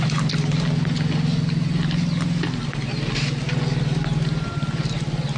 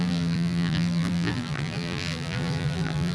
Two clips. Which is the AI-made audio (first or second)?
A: second